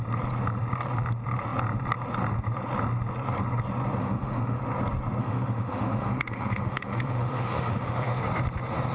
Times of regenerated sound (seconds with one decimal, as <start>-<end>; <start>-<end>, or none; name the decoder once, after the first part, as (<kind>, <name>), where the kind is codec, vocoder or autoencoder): 4.0-4.6 (autoencoder, DAC-VAE); 5.2-8.2